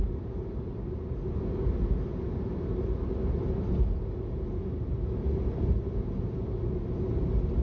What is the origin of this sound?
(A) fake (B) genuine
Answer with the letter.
B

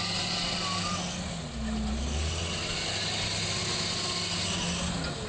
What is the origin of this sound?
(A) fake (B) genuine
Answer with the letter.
B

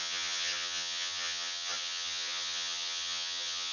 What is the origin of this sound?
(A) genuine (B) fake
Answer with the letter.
B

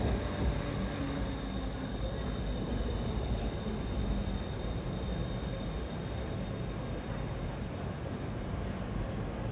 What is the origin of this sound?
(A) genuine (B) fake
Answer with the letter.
A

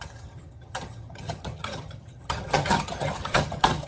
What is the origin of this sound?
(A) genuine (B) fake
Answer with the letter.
B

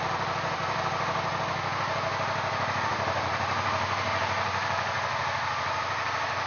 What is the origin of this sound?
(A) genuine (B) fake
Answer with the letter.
A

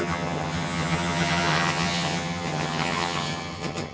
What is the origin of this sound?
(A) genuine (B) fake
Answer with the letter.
B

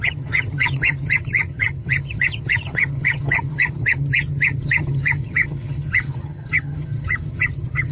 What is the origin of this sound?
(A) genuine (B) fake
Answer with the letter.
B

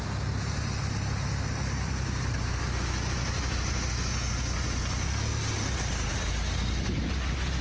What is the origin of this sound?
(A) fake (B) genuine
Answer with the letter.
B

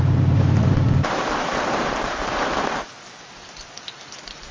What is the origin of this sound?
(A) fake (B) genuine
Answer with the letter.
B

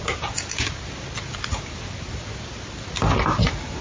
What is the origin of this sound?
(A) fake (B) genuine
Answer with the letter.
B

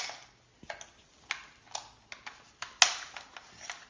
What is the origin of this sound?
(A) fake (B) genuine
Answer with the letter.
B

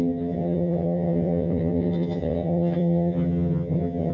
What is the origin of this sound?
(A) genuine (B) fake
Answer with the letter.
B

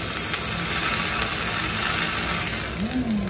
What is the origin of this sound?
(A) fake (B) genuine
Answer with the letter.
B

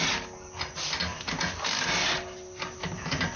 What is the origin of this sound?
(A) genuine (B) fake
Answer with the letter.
A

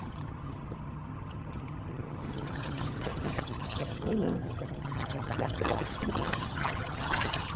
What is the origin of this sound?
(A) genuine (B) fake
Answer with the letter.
B